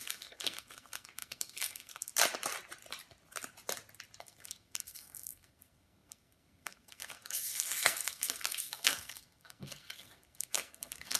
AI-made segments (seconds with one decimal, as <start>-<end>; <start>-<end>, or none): 0.0-2.1; 4.2-11.2